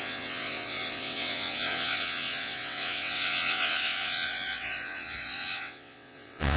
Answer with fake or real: fake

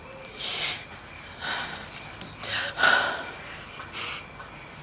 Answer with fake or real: real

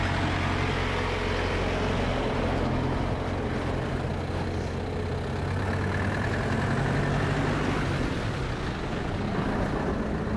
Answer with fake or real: real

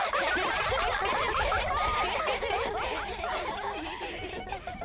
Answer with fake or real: real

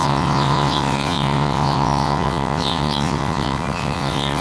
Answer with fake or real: fake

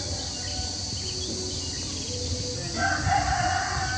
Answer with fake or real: real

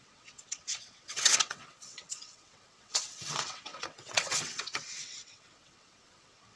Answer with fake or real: fake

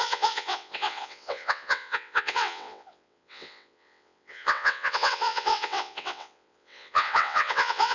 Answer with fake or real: fake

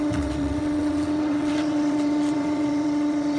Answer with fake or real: fake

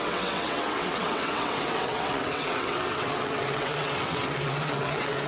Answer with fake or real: fake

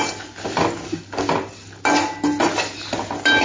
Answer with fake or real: real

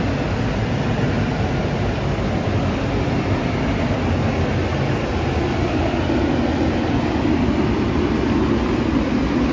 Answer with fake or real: real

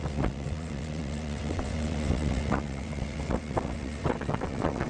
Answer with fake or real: fake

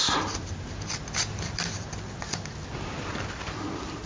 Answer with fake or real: real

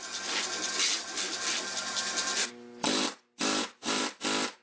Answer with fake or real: real